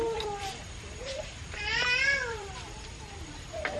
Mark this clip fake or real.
fake